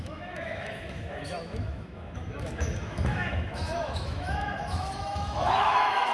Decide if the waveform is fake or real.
fake